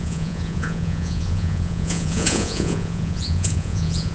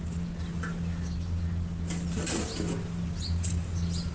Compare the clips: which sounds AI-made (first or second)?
first